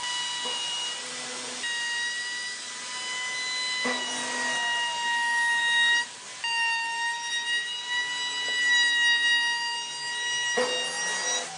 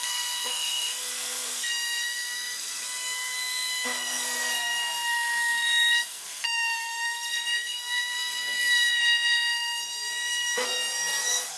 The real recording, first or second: first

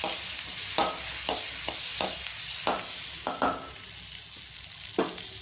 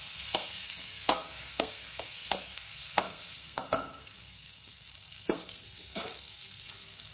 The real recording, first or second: first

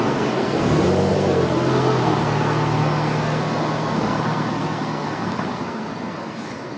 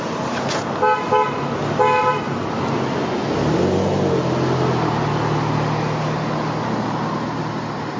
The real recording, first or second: second